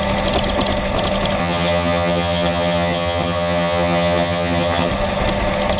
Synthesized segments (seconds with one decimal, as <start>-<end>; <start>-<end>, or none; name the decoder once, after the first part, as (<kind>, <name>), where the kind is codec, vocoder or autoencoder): 1.4-4.9 (vocoder, HiFi-GAN)